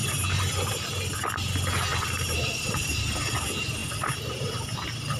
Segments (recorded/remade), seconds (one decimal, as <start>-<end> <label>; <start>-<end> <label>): 0.0-1.9 recorded; 1.9-3.0 remade; 3.0-3.8 recorded; 3.8-4.5 remade; 4.5-5.2 recorded